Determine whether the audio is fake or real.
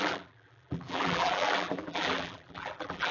fake